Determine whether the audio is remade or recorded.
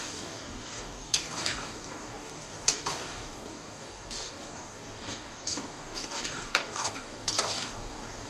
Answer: remade